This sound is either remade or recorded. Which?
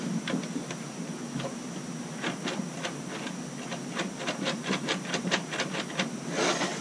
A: recorded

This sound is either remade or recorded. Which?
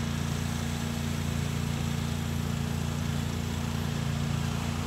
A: remade